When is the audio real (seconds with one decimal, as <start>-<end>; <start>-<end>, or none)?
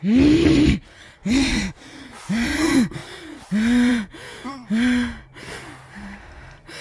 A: 0.0-3.9; 4.5-6.8